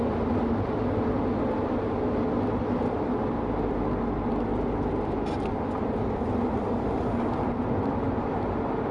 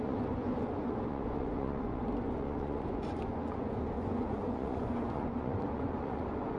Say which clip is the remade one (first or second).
second